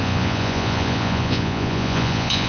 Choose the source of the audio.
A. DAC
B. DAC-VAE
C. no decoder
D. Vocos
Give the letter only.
D